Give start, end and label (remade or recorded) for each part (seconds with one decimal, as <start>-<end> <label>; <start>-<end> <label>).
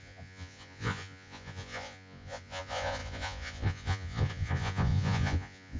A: 0.0-5.8 remade